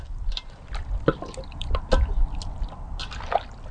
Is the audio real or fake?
real